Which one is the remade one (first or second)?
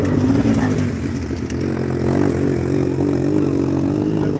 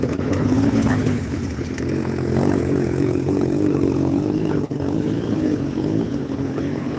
second